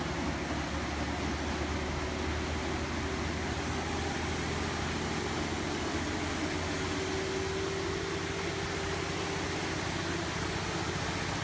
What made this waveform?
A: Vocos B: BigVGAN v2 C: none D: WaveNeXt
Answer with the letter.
C